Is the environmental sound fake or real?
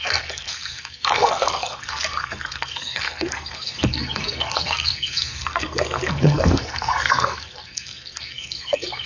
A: fake